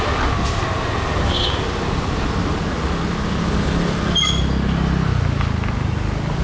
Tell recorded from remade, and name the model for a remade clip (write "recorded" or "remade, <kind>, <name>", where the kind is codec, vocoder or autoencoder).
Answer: recorded